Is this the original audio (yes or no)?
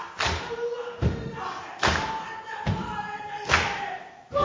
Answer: yes